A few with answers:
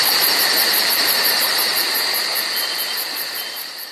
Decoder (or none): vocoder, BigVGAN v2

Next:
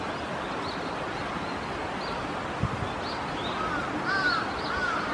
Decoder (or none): none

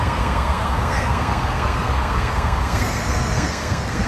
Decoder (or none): codec, SNAC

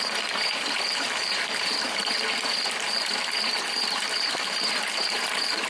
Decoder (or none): vocoder, BigVGAN v2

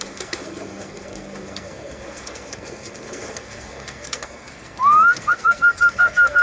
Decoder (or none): codec, SNAC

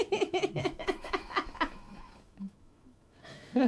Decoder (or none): autoencoder, DAC-VAE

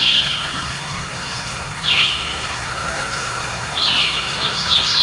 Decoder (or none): codec, SNAC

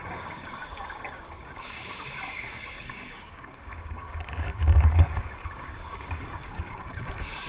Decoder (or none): codec, DAC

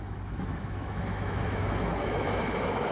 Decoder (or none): autoencoder, DAC-VAE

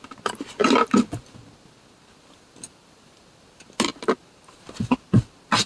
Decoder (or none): none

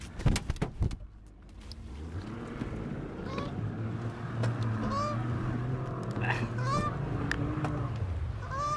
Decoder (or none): none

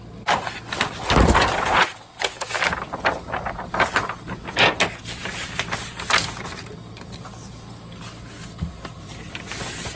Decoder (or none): none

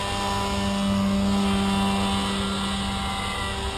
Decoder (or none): none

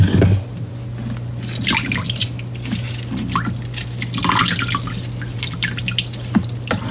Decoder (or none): none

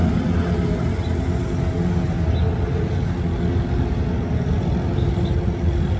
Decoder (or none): none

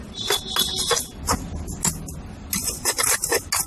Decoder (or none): none